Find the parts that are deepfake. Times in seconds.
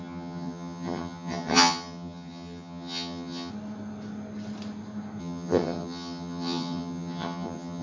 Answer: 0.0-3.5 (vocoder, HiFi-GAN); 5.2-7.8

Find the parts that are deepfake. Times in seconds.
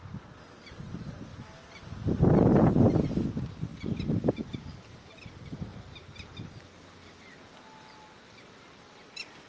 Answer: none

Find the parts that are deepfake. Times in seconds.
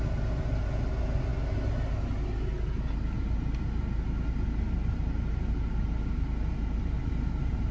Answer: none